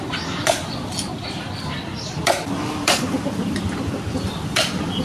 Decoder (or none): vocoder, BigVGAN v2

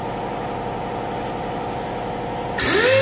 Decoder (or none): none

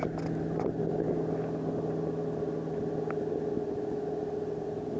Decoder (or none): none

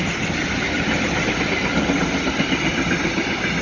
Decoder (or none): none